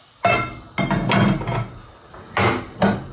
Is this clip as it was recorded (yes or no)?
yes